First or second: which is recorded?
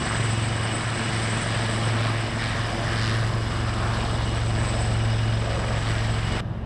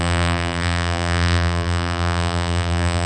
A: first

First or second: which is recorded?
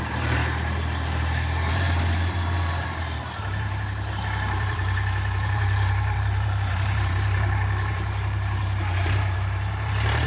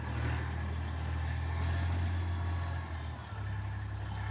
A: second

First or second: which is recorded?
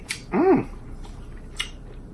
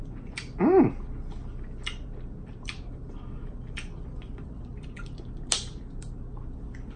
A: second